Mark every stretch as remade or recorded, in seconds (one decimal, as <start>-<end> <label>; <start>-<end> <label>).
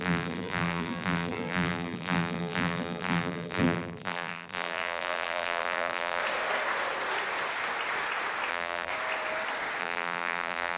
0.0-6.2 remade; 6.2-8.5 recorded; 8.5-8.9 remade; 8.9-9.8 recorded; 9.8-10.8 remade